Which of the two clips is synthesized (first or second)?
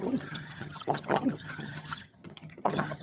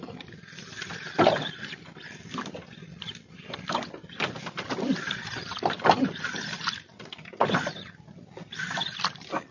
first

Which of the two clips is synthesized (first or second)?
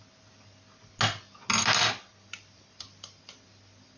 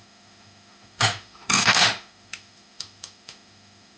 second